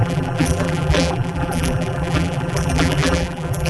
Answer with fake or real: fake